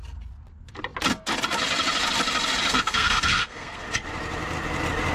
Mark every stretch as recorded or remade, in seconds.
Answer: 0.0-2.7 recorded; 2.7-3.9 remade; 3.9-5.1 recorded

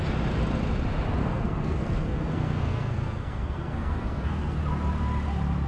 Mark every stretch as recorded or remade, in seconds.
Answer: 0.0-1.2 recorded; 1.2-4.6 remade; 4.6-5.7 recorded

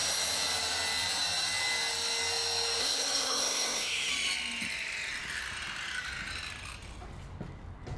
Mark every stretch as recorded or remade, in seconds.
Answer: 0.0-2.8 recorded; 2.8-4.1 remade; 4.1-8.0 recorded

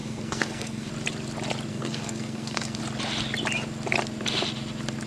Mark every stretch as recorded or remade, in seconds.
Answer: 0.0-0.9 remade; 0.9-1.7 recorded; 1.7-2.8 remade; 2.8-5.1 recorded